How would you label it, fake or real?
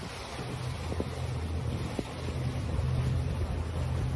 real